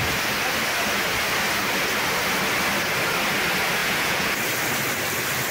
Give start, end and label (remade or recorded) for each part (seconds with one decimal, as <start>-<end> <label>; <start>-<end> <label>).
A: 0.0-3.8 recorded; 3.8-4.3 remade; 4.3-5.5 recorded

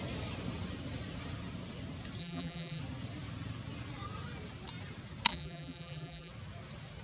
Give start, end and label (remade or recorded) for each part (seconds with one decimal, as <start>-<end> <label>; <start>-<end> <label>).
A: 0.0-2.2 recorded; 2.2-2.8 remade; 2.8-5.3 recorded; 5.3-6.3 remade; 6.3-7.0 recorded

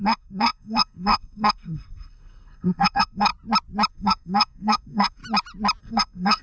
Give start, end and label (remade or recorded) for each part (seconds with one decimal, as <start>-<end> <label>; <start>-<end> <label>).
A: 0.0-3.3 remade; 3.3-3.9 recorded; 3.9-5.2 remade; 5.2-5.8 recorded; 5.8-6.4 remade

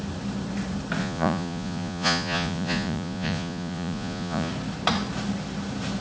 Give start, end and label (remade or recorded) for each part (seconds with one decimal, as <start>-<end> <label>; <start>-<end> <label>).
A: 0.0-1.0 recorded; 1.0-4.5 remade; 4.5-6.0 recorded

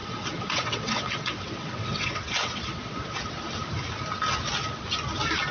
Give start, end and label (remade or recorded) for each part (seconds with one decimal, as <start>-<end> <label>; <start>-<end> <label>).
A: 0.0-3.2 remade; 3.2-5.5 recorded

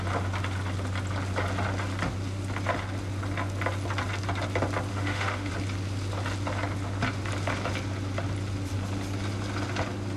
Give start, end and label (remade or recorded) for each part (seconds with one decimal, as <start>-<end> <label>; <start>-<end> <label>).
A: 0.0-4.9 recorded; 4.9-5.5 remade; 5.5-10.2 recorded